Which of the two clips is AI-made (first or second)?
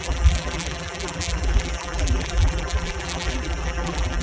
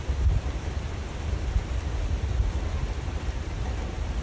first